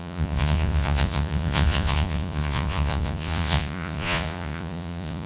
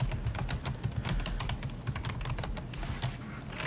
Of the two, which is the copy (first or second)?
first